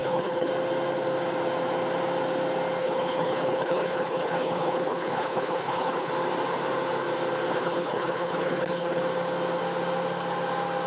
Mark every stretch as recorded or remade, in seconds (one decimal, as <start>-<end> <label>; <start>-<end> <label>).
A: 0.0-0.5 remade; 0.5-2.8 recorded; 2.8-6.1 remade; 6.1-7.5 recorded; 7.5-9.0 remade; 9.0-10.9 recorded